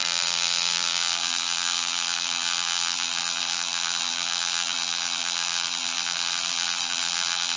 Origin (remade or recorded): remade